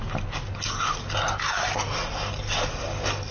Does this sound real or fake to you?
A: real